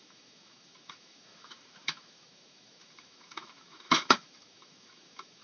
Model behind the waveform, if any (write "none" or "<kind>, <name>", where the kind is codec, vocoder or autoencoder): autoencoder, DAC-VAE